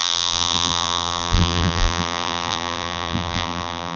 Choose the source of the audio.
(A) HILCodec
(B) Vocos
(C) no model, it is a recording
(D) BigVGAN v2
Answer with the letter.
D